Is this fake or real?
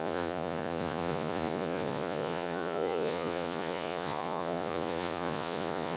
fake